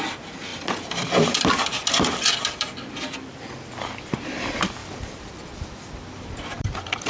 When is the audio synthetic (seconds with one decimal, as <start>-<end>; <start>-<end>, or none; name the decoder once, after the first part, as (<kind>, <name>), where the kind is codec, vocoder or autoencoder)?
0.5-3.3 (vocoder, BigVGAN v2); 4.8-7.1